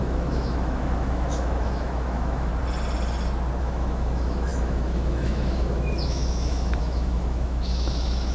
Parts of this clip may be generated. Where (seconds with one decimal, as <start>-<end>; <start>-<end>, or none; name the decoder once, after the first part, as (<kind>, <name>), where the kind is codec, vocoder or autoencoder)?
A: 0.0-2.5 (autoencoder, DAC-VAE); 3.6-8.3